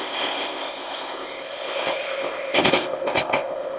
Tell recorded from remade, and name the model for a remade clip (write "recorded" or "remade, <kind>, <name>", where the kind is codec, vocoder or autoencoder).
remade, codec, ZipCodec